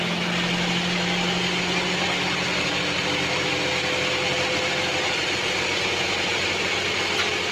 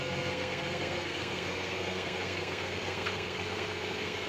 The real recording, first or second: first